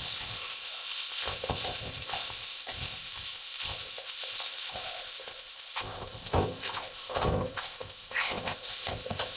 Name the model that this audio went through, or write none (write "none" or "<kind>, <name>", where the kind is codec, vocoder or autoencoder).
codec, ZipCodec